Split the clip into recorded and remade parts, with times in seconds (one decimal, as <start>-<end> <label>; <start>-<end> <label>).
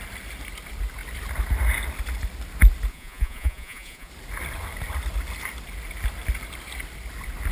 0.0-2.9 recorded; 2.9-4.1 remade; 4.1-7.5 recorded